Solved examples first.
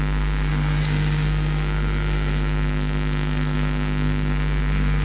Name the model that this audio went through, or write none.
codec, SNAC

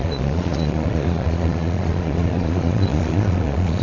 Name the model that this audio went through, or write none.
vocoder, Vocos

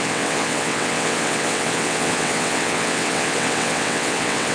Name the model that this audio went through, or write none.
vocoder, WaveNeXt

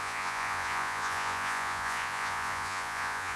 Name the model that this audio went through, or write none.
vocoder, Vocos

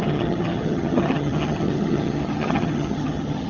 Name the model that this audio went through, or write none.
vocoder, HiFi-GAN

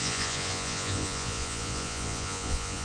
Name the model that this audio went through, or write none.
vocoder, Vocos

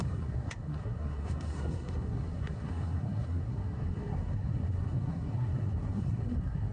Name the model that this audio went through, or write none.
codec, SNAC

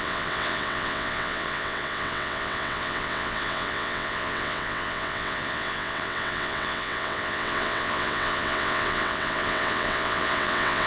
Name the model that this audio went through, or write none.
vocoder, WaveNeXt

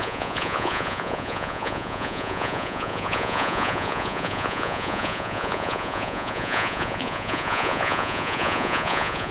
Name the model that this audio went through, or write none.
vocoder, Vocos